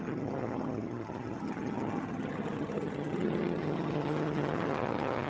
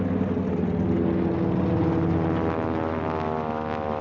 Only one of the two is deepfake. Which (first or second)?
first